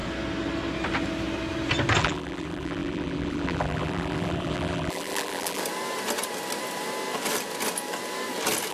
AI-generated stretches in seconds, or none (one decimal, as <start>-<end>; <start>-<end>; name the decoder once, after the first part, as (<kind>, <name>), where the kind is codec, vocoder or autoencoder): 2.0-5.6 (vocoder, BigVGAN v2)